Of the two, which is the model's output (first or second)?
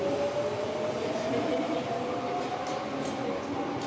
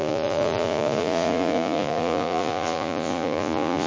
second